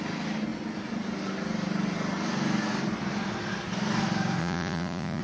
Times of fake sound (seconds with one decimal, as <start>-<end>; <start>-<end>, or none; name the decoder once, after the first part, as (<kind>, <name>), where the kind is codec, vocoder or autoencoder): 4.4-5.2 (vocoder, Vocos)